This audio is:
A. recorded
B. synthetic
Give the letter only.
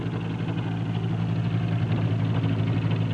A